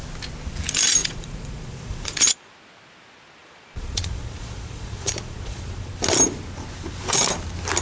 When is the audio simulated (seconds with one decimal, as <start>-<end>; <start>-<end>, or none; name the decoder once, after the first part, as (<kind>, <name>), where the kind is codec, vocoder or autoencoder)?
1.0-2.5 (vocoder, Vocos); 3.4-5.9